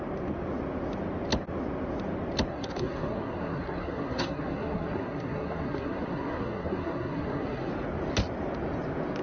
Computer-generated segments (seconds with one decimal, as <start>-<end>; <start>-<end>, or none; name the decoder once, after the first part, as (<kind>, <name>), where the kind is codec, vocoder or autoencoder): 2.5-7.7 (codec, SNAC)